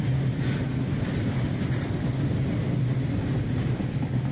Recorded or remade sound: recorded